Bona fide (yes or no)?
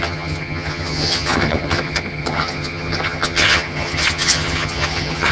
no